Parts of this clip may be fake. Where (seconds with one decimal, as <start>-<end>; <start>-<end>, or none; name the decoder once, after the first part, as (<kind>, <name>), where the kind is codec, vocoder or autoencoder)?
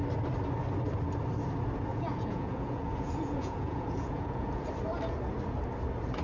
1.9-4.7 (vocoder, Vocos)